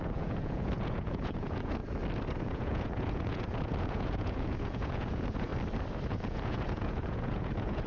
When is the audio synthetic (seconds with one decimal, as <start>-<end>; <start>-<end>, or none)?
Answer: 0.0-1.8; 2.4-5.5; 6.1-7.9